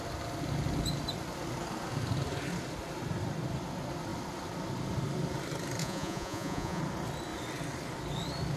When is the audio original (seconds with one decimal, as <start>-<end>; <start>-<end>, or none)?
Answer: 0.0-5.8; 6.8-8.6